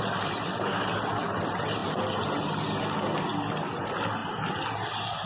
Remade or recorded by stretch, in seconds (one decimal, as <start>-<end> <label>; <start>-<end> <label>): 0.0-3.3 recorded; 3.3-3.8 remade; 3.8-5.3 recorded